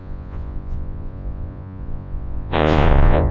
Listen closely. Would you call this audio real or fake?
fake